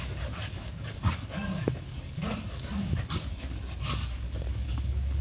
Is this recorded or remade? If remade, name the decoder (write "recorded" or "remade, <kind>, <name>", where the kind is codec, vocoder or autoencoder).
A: remade, codec, DAC